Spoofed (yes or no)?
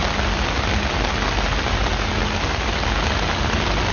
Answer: no